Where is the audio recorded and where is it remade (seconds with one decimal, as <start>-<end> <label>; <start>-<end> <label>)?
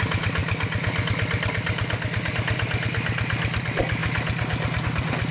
0.0-5.3 recorded